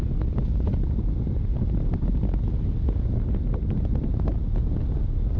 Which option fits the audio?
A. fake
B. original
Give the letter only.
B